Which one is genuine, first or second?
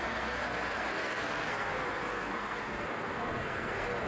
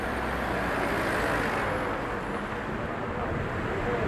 second